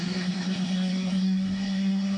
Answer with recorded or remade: remade